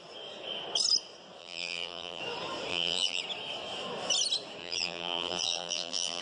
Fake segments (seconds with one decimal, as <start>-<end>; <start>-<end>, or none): 1.4-2.2; 2.7-3.2; 4.6-6.2